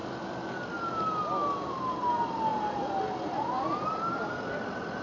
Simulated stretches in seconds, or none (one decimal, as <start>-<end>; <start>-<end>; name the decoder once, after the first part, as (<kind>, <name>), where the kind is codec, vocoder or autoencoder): none